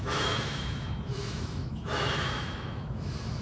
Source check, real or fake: fake